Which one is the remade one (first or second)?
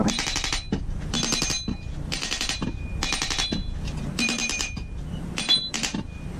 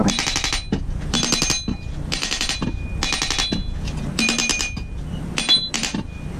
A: first